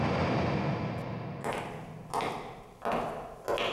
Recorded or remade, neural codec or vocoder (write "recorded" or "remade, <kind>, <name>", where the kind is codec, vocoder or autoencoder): recorded